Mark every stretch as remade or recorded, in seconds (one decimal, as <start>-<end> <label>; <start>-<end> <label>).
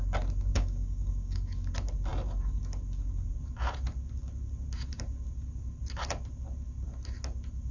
0.0-0.5 recorded; 0.5-1.7 remade; 1.7-7.7 recorded